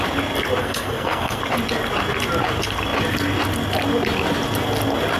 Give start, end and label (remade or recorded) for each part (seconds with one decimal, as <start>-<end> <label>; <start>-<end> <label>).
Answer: 0.0-0.6 recorded; 0.6-1.4 remade; 1.4-5.2 recorded